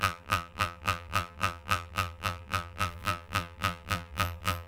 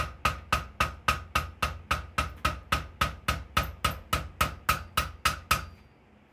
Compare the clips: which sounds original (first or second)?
second